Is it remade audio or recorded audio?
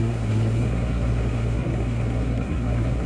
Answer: remade